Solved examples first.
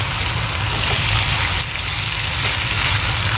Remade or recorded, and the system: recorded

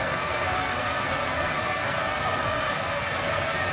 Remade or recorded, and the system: remade, codec, SNAC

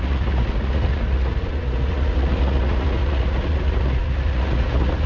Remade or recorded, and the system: remade, vocoder, Vocos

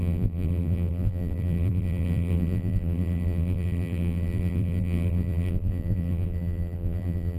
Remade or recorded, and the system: remade, vocoder, BigVGAN v2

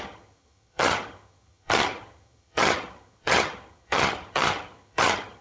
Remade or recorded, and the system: remade, vocoder, HiFi-GAN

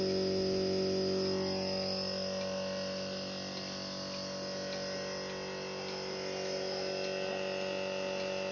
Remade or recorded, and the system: recorded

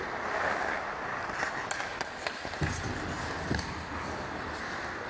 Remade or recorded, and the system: recorded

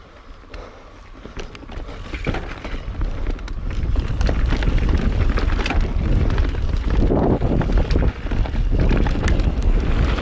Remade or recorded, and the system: recorded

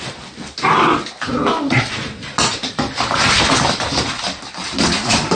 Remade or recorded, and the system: recorded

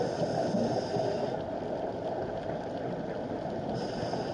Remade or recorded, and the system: recorded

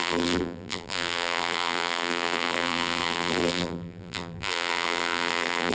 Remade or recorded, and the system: remade, vocoder, BigVGAN v2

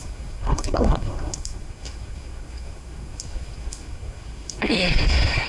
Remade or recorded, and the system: remade, codec, SNAC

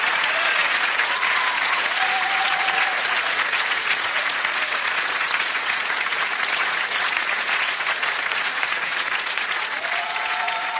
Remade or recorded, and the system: remade, vocoder, Vocos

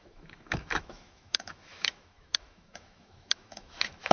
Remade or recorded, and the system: remade, autoencoder, DAC-VAE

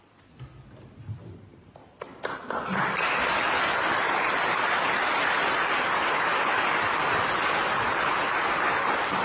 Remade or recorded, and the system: recorded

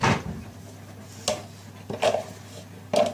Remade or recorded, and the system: recorded